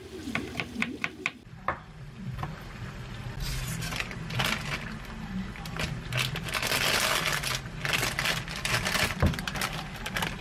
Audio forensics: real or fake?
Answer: real